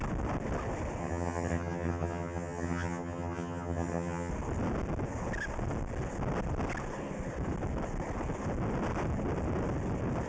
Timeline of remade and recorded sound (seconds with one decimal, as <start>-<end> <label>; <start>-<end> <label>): 0.0-1.0 recorded; 1.0-4.3 remade; 4.3-10.3 recorded